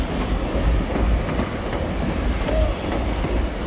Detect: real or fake real